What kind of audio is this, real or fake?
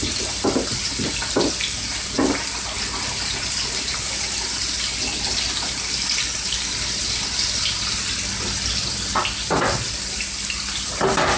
real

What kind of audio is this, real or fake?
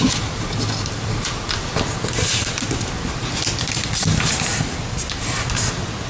real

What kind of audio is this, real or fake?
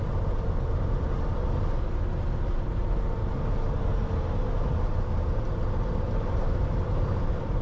real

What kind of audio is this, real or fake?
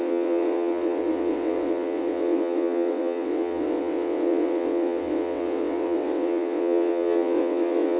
fake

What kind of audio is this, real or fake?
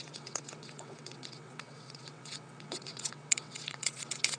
fake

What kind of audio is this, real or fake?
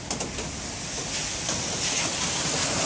real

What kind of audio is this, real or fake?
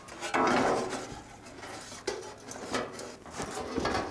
real